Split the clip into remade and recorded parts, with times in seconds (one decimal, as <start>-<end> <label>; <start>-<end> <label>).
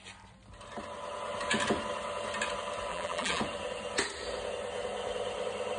0.0-2.9 recorded; 2.9-3.4 remade; 3.4-5.8 recorded